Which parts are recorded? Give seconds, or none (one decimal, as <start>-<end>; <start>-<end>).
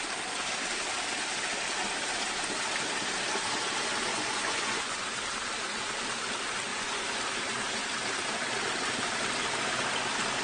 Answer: 0.0-4.1; 5.0-6.7; 7.2-10.4